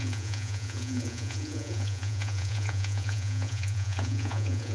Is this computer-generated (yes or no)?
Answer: yes